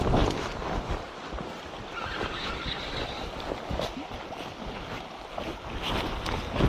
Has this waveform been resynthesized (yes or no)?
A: no